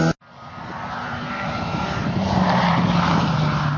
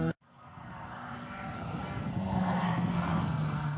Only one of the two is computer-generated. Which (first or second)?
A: second